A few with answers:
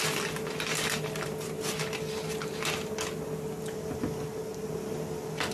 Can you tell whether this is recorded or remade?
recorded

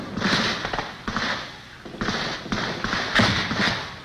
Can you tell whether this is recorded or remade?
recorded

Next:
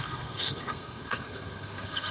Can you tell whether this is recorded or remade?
remade